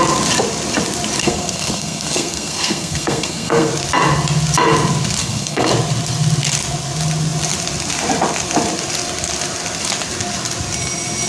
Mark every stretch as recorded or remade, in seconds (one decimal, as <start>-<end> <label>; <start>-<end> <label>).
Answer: 0.0-1.2 recorded; 1.2-3.7 remade; 3.7-5.2 recorded; 5.2-5.7 remade; 5.7-11.3 recorded